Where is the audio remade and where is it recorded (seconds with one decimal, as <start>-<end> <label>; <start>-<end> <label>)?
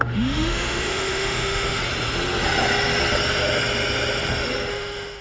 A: 0.0-1.8 remade; 1.8-4.7 recorded; 4.7-5.2 remade